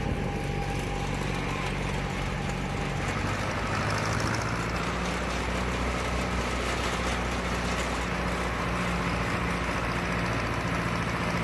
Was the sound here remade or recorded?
recorded